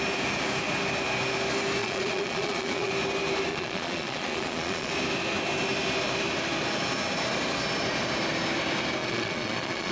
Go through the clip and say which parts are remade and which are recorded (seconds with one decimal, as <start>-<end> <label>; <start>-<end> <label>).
0.0-1.8 recorded; 1.8-2.9 remade; 2.9-3.5 recorded; 3.5-4.9 remade; 4.9-9.0 recorded; 9.0-9.9 remade